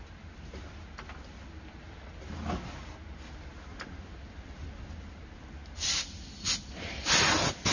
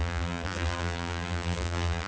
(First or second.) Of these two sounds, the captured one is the first